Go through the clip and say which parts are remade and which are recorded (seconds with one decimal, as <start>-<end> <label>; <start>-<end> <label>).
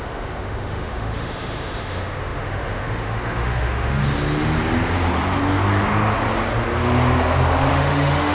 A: 0.0-4.0 remade; 4.0-7.7 recorded; 7.7-8.3 remade